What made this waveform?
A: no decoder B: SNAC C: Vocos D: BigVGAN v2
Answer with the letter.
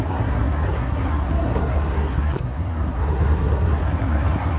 B